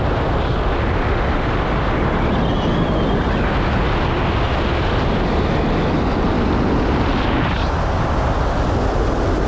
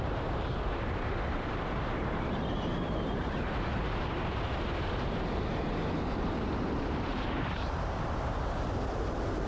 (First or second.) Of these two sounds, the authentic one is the first